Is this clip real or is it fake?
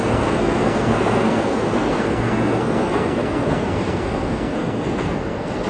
fake